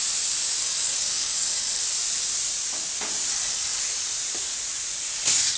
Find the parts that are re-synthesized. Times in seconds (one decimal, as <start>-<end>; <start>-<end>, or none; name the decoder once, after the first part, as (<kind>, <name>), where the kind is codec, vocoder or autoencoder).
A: 0.6-1.8 (codec, DAC); 3.3-3.8